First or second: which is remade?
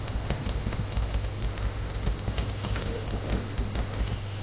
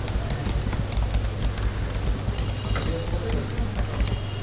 first